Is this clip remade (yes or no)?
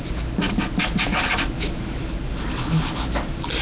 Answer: no